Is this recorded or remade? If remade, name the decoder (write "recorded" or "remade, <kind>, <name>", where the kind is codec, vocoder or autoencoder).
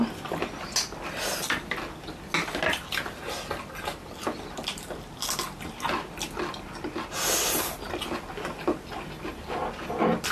recorded